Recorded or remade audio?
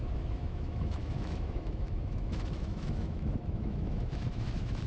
remade